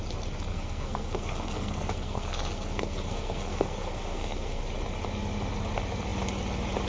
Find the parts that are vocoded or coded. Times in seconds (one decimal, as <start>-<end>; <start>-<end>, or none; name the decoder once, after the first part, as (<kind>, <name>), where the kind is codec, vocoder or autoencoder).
0.5-4.6 (codec, SNAC)